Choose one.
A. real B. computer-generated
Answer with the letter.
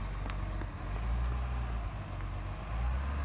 A